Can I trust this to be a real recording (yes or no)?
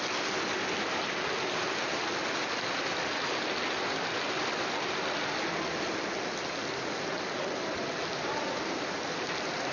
yes